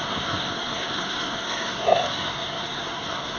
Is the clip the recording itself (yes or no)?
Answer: no